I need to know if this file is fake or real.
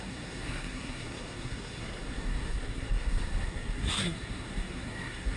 fake